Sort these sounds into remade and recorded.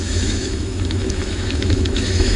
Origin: remade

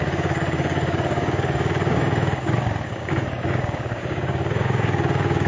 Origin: remade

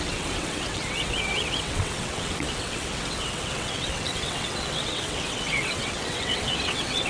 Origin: remade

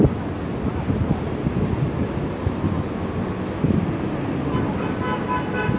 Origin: recorded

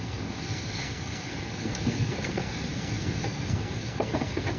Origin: remade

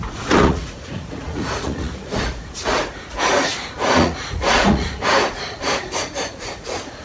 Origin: remade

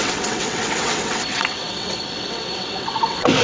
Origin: remade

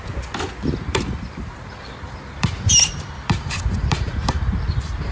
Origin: remade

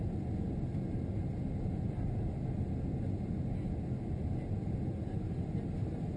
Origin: recorded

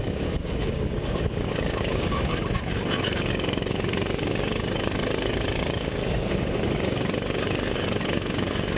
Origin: remade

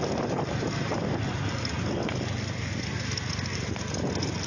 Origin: recorded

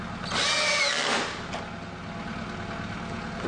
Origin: recorded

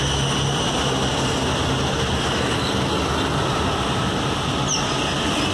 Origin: recorded